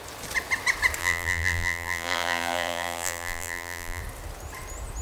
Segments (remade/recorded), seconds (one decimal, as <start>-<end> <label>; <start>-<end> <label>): 0.0-1.0 recorded; 1.0-4.0 remade; 4.0-5.0 recorded